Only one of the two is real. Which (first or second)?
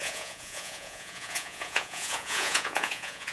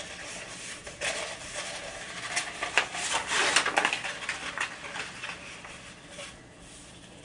second